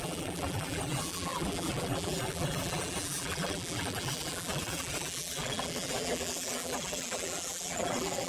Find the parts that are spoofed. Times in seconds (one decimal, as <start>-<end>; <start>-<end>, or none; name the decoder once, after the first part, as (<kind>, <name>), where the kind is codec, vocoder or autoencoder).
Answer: 0.0-8.3 (vocoder, BigVGAN v2)